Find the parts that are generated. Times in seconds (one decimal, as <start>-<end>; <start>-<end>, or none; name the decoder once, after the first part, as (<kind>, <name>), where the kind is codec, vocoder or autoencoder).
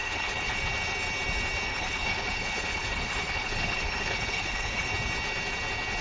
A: 0.0-0.6 (codec, HILCodec); 1.7-4.9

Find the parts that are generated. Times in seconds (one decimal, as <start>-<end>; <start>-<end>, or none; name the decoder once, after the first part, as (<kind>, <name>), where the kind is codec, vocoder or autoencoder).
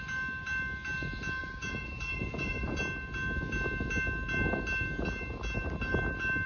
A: 1.4-2.8 (vocoder, Vocos)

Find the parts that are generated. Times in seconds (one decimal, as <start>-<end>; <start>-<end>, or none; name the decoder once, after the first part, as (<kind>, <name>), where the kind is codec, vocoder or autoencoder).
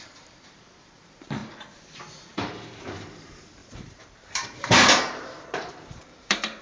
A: 0.0-6.6 (vocoder, BigVGAN v2)